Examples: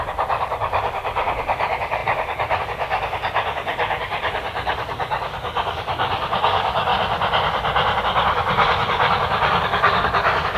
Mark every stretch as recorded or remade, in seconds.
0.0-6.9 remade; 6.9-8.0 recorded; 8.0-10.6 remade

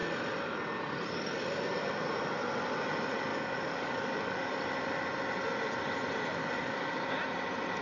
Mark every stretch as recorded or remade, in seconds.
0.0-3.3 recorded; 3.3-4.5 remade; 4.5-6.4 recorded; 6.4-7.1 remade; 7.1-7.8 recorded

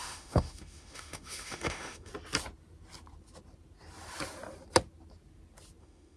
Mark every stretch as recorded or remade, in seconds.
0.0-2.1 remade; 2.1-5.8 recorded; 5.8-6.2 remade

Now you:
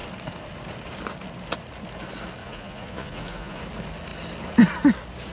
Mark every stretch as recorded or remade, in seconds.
0.0-2.4 recorded; 2.4-3.6 remade; 3.6-5.3 recorded